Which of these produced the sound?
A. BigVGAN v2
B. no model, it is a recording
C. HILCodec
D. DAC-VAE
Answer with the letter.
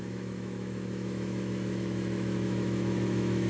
D